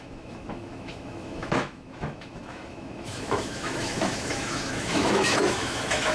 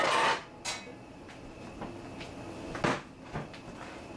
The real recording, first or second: second